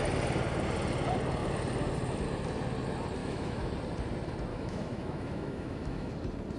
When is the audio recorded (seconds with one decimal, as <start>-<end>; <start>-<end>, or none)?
0.0-3.2; 3.7-4.5; 6.1-6.6